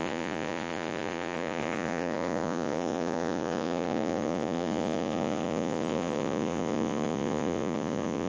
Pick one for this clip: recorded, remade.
remade